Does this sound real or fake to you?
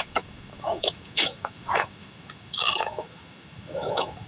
fake